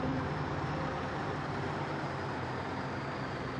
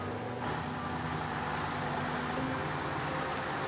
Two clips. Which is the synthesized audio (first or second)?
first